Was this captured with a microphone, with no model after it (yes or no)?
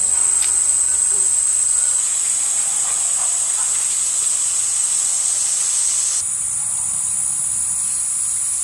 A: yes